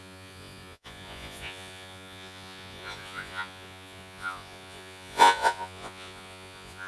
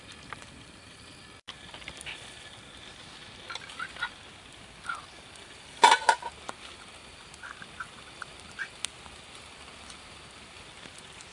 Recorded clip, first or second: second